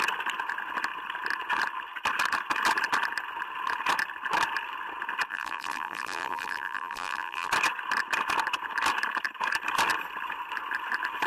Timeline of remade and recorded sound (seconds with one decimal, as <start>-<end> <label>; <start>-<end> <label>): 0.0-5.3 recorded; 5.3-7.5 remade; 7.5-11.3 recorded